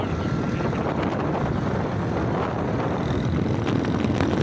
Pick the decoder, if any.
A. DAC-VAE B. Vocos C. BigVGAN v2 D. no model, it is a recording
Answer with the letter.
D